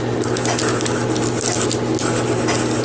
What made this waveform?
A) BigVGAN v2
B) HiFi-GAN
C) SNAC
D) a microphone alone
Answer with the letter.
D